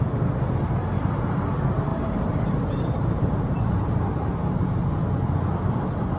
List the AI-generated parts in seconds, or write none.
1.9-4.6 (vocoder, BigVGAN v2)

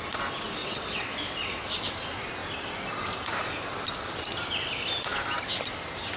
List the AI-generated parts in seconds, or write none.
0.6-1.8 (vocoder, WaveNeXt)

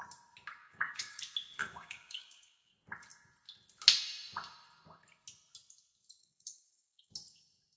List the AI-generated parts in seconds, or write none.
0.6-1.2 (codec, DAC); 1.6-2.7; 6.2-7.1

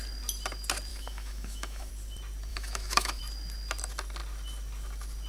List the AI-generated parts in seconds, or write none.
0.9-1.9 (autoencoder, DAC-VAE); 2.5-3.2

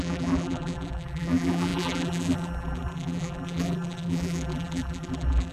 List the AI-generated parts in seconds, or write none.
0.0-5.5 (vocoder, BigVGAN v2)

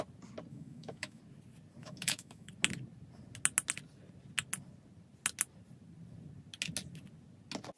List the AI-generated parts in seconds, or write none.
0.5-1.2 (autoencoder, DAC-VAE); 1.8-2.5